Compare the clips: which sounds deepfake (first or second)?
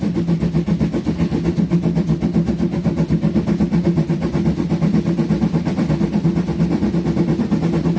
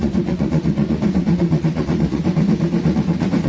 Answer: second